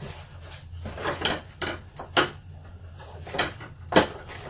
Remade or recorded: recorded